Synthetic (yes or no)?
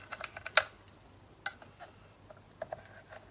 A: no